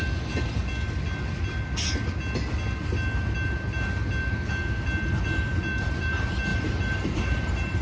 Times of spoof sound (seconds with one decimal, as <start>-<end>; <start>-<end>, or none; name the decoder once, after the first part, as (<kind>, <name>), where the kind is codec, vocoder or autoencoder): 5.5-6.1 (vocoder, BigVGAN v2); 6.5-7.8